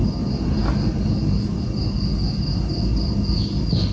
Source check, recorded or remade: recorded